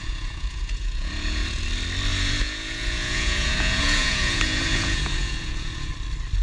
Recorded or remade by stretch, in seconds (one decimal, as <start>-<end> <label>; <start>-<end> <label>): 0.0-1.6 remade; 1.6-2.1 recorded; 2.1-5.9 remade; 5.9-6.4 recorded